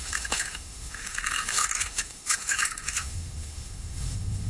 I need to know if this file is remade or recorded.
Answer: remade